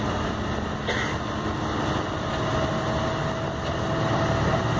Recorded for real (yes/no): yes